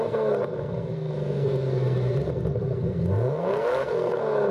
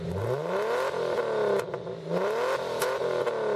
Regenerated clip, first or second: first